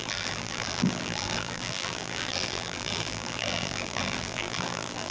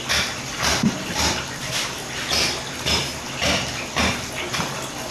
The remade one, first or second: first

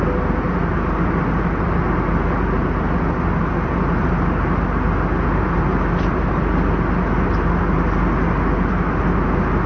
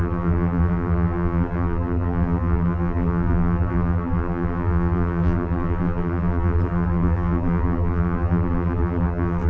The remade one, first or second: second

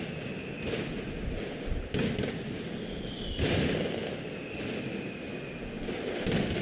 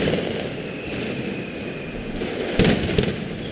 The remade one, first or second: second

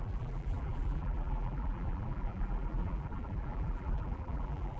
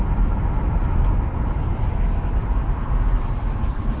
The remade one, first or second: first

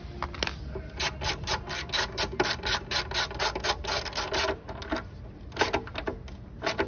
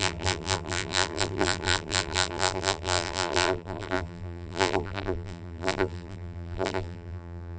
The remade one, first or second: second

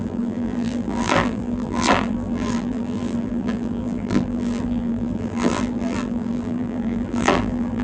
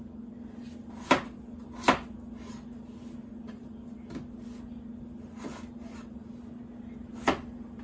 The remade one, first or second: first